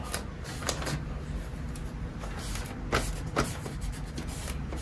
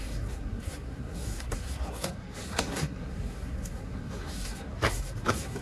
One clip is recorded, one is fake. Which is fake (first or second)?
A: second